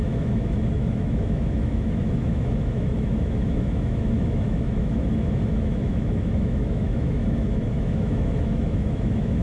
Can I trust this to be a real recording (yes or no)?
no